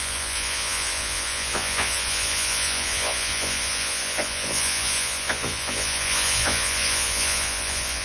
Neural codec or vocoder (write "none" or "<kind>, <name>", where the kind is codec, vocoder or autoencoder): vocoder, Vocos